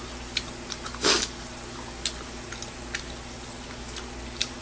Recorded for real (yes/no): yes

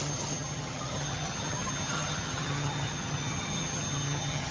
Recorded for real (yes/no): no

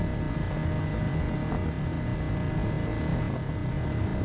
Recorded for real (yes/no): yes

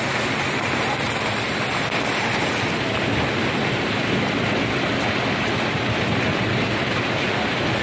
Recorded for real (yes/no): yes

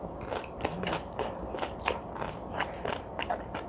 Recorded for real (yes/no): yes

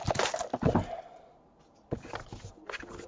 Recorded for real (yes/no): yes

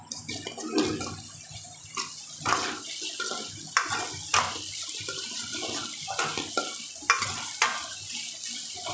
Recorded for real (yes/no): yes